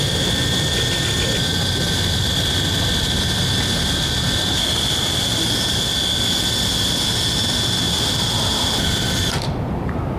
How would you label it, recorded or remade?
recorded